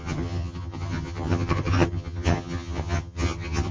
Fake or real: fake